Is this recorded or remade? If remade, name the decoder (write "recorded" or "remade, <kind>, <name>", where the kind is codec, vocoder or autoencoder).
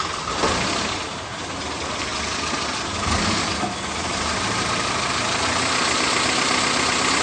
recorded